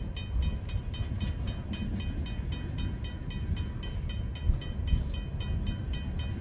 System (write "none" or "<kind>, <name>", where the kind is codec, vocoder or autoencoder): none